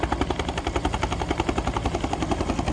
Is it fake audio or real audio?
real